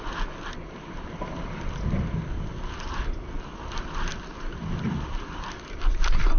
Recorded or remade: recorded